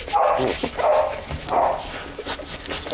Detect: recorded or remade recorded